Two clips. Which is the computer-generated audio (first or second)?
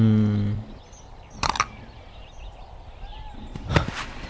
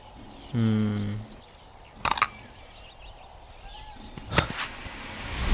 first